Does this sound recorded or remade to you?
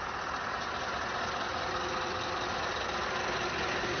recorded